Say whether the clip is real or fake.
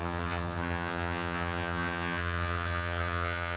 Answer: fake